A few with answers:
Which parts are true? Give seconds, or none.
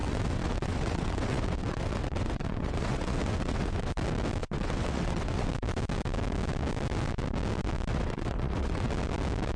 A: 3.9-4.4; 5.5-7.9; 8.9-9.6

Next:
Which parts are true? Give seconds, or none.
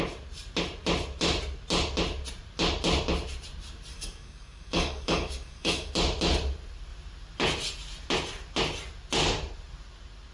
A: 0.0-3.9; 5.9-10.3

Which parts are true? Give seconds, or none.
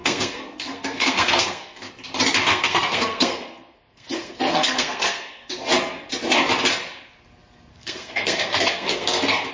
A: 1.9-2.5; 5.5-7.7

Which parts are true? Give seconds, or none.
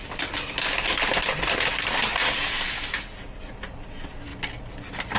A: 0.0-5.2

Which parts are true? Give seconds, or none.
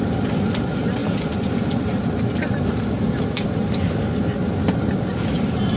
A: 0.0-5.1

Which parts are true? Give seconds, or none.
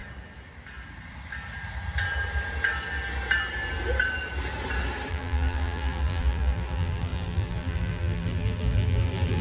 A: 0.0-5.1